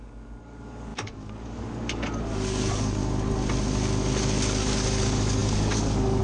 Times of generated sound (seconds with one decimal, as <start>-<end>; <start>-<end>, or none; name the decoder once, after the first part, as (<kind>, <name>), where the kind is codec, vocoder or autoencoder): 0.0-3.0 (codec, DAC); 4.6-6.2

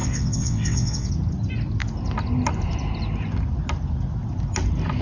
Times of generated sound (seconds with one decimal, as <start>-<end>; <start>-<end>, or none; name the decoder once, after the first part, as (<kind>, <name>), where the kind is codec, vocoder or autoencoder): 0.0-1.1 (vocoder, WaveNeXt)

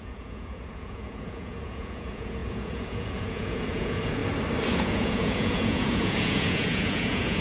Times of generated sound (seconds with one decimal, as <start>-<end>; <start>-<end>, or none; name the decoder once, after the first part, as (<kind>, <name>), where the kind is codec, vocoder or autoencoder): 0.0-4.2 (vocoder, Vocos); 4.8-7.4

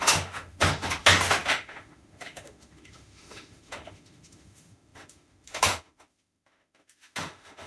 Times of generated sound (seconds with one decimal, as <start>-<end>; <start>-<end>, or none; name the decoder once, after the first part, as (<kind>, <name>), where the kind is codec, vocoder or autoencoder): 0.0-7.7 (autoencoder, DAC-VAE)